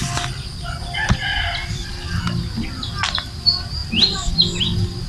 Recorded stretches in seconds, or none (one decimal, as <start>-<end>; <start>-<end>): 0.0-1.8; 2.4-5.1